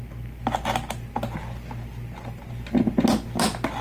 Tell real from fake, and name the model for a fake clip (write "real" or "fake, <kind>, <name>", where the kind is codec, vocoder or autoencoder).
real